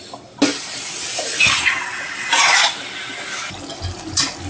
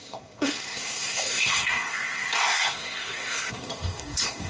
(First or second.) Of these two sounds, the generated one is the second